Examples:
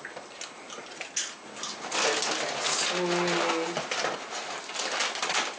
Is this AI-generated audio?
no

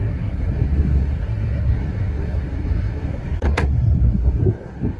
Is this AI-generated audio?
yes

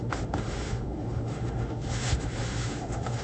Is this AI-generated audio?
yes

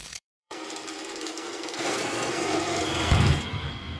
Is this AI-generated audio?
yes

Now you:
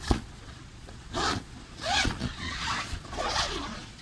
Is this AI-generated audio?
yes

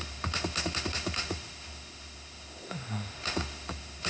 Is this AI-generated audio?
yes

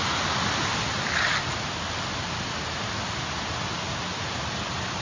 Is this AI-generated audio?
no